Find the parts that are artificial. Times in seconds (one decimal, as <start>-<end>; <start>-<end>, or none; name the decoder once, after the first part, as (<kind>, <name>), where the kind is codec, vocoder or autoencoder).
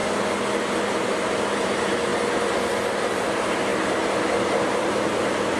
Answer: 1.6-2.1 (vocoder, BigVGAN v2); 3.0-5.6